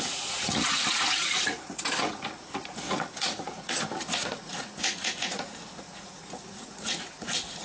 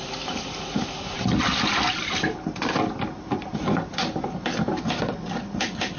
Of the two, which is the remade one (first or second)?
first